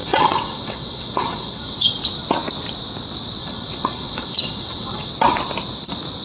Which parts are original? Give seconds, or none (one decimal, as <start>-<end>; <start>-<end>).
1.9-3.4; 5.1-6.2

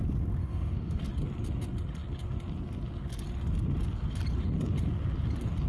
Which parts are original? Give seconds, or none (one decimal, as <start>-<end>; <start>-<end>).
0.0-0.4; 1.0-5.7

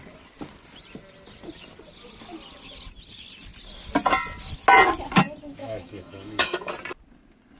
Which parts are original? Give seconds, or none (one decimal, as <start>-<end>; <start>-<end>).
0.0-5.6; 6.7-7.6

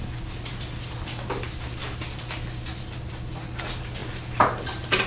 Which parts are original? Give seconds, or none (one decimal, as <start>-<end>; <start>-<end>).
0.0-5.1

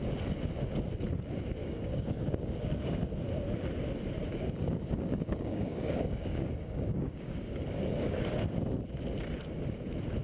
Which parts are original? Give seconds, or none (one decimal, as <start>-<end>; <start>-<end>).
0.0-1.6; 3.0-4.3; 8.3-10.2

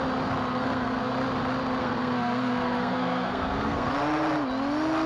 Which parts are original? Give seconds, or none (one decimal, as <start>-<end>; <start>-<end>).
0.0-0.5; 1.1-1.8; 3.9-5.1

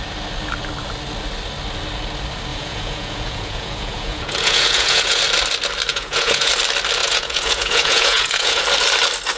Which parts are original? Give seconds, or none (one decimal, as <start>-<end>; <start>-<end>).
0.0-2.5; 5.2-5.9; 6.5-7.0; 8.6-9.4